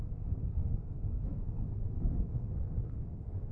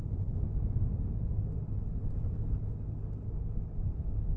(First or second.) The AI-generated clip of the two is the first